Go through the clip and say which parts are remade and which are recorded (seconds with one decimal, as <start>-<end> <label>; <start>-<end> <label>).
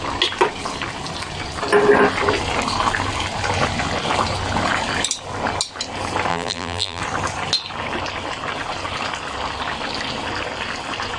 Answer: 0.0-6.3 recorded; 6.3-7.0 remade; 7.0-11.2 recorded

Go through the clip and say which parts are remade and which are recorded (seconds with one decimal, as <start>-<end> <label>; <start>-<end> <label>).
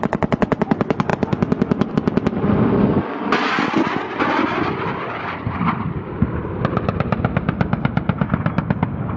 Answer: 0.0-9.2 recorded